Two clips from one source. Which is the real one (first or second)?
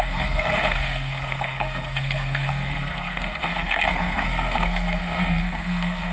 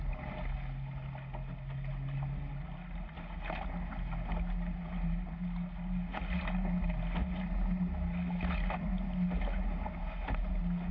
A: second